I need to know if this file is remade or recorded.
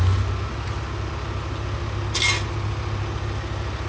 recorded